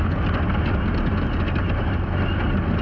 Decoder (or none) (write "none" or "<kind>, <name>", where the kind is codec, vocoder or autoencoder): none